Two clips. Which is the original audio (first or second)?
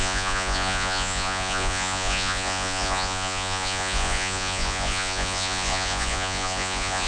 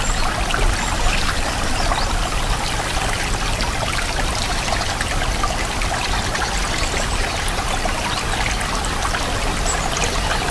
second